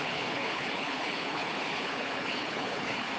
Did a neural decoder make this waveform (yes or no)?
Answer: yes